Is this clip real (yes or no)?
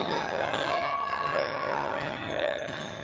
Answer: no